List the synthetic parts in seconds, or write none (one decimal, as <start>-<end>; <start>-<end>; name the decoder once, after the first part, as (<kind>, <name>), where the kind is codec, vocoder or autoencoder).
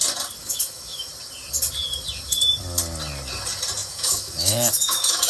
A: 0.4-1.1 (autoencoder, DAC-VAE); 3.8-5.3